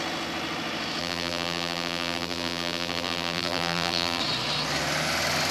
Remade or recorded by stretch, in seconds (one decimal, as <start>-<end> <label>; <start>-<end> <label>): 0.0-1.0 recorded; 1.0-4.2 remade; 4.2-5.5 recorded